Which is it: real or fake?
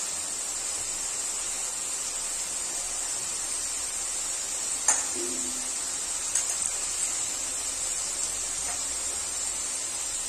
real